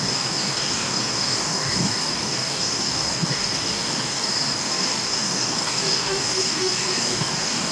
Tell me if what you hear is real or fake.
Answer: fake